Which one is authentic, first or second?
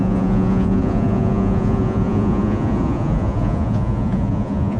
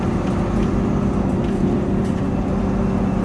second